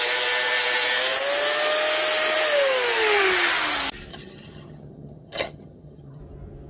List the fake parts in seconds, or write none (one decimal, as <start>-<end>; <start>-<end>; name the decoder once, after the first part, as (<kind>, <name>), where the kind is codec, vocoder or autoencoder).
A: 4.1-6.2 (vocoder, HiFi-GAN)